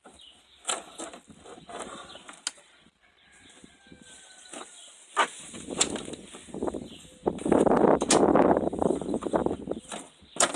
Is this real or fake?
real